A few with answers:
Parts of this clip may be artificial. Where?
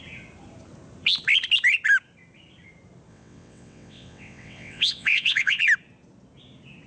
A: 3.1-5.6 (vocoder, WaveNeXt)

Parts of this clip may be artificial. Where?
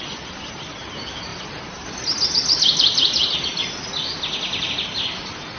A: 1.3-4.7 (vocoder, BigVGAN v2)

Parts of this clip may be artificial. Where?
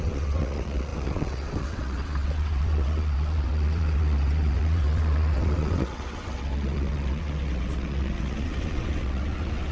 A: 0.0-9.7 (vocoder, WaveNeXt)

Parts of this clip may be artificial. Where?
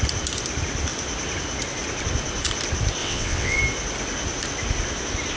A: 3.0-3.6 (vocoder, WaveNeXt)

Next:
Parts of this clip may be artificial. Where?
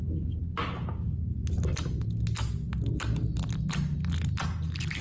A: none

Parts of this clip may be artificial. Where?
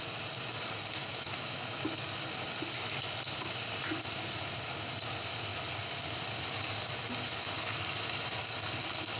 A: 1.0-1.8 (autoencoder, DAC-VAE)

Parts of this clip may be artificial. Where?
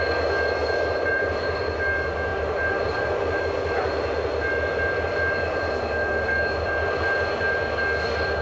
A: 0.6-1.6 (vocoder, BigVGAN v2); 2.3-3.4